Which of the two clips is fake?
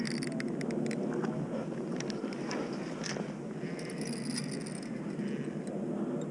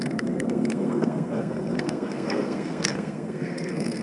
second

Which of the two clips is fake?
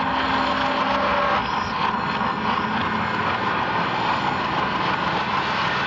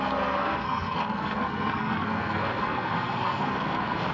second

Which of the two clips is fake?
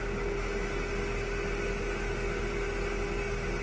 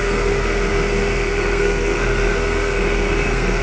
second